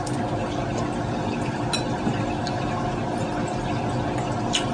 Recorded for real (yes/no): yes